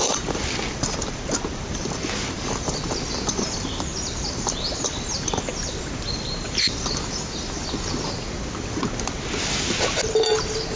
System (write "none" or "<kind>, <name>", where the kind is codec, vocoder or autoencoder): none